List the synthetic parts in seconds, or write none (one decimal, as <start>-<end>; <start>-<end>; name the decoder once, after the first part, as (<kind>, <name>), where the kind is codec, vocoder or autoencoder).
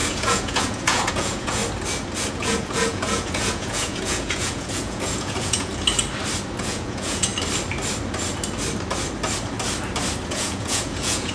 0.0-1.6 (vocoder, Vocos); 2.3-5.7; 6.6-7.3; 10.3-11.3